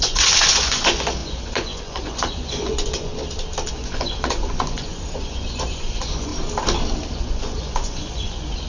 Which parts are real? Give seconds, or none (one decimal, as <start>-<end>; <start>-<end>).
3.1-3.7; 6.3-7.1